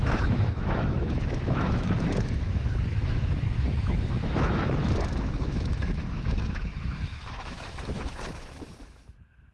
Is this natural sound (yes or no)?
no